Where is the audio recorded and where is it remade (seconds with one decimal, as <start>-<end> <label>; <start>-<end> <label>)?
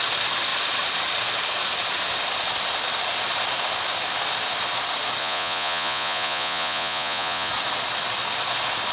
0.0-5.2 recorded; 5.2-7.5 remade; 7.5-8.9 recorded